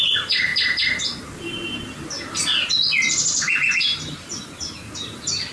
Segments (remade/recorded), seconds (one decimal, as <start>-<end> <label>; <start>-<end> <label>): 0.0-0.5 remade; 0.5-3.8 recorded; 3.8-4.3 remade; 4.3-5.5 recorded